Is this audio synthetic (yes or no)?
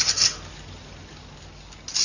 no